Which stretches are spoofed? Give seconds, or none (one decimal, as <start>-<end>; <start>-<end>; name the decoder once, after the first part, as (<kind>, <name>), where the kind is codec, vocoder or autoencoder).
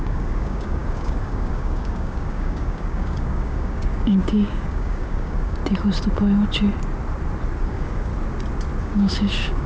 0.0-5.6 (codec, DAC); 7.6-8.1; 8.8-9.7